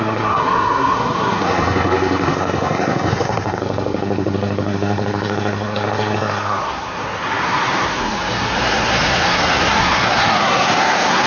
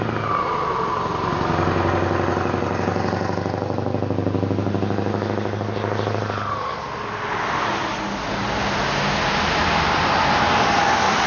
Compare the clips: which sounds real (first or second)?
second